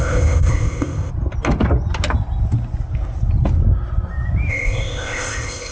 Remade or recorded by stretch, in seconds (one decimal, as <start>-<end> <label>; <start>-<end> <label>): 0.0-1.1 remade; 1.1-4.5 recorded; 4.5-5.7 remade